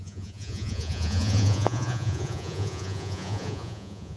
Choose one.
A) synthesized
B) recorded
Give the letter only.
A